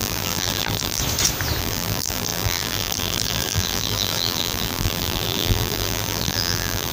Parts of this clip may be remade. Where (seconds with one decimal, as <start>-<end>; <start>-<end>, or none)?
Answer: 0.0-1.0; 1.6-6.9

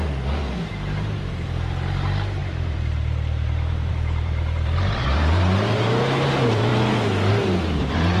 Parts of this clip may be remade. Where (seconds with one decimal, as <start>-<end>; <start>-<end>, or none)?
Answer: 0.7-6.7; 7.3-8.2

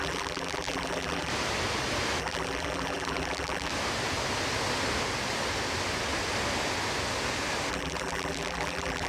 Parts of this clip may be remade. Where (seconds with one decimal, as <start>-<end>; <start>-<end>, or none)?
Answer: 0.0-1.3; 2.2-3.7; 7.7-9.1

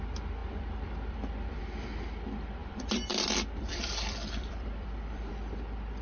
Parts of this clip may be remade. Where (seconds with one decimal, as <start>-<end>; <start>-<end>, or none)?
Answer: 0.4-1.6; 2.6-5.3

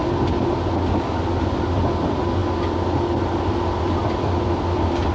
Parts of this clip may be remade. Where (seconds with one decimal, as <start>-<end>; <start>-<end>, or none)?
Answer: 0.9-2.4; 3.7-5.1